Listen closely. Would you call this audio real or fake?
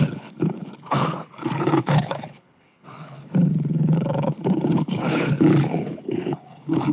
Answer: fake